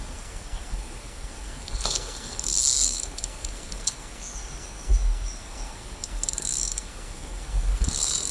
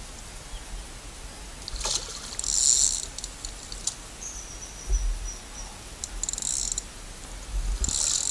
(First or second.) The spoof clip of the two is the first